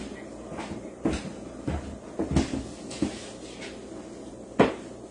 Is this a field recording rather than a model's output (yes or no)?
yes